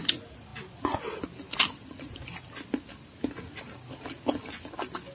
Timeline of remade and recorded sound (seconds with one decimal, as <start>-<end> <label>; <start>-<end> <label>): 0.0-5.1 recorded